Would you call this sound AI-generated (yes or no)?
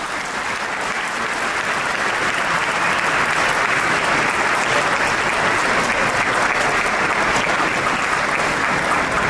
no